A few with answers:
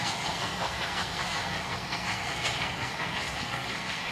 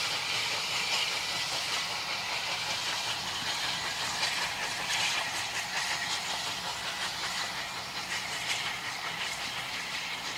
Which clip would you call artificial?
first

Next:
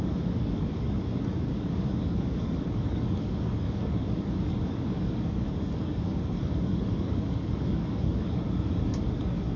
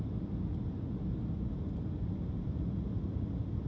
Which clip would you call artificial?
first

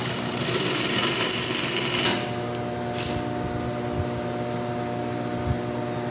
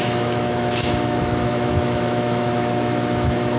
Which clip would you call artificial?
second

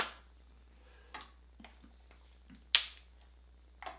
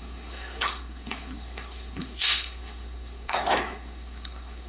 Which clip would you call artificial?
second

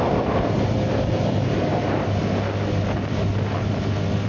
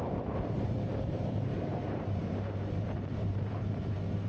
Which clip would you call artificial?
second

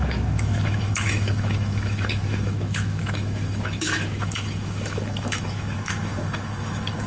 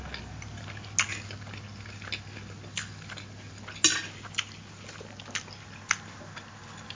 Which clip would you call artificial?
first